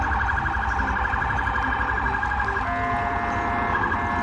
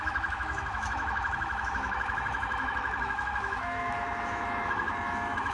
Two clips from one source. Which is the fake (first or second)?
second